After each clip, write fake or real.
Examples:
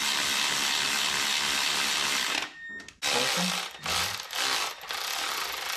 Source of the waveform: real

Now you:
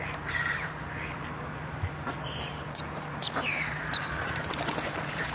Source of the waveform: fake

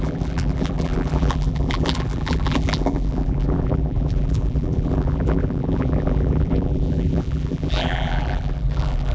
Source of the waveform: fake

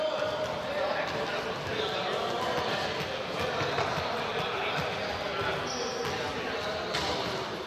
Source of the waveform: real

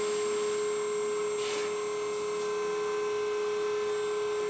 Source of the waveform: real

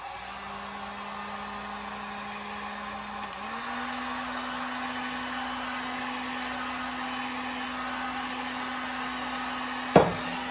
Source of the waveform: real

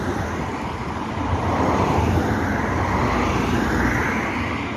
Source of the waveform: real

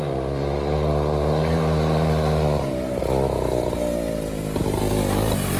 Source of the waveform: real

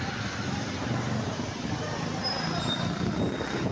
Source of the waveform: real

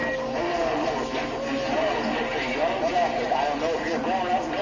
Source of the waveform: real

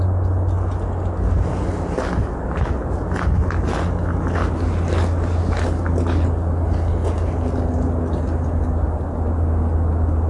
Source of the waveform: real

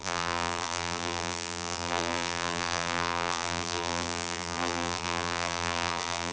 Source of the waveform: fake